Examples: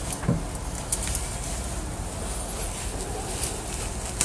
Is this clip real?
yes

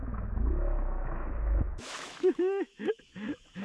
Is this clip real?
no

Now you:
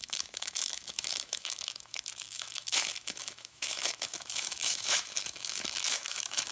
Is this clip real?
no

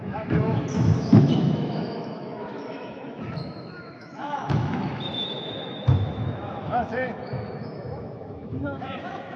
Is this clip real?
no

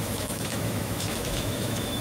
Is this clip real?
no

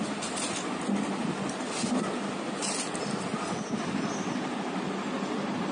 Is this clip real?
yes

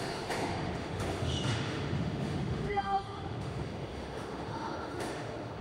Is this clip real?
no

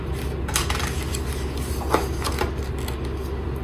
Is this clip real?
yes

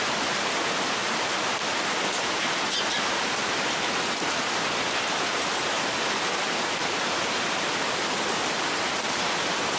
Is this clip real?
yes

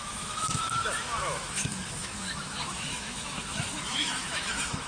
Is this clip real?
no